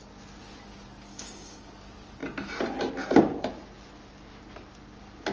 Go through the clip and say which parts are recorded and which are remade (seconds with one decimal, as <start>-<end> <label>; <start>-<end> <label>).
0.0-1.1 recorded; 1.1-1.7 remade; 1.7-5.3 recorded